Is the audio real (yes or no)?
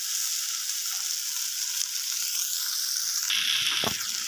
yes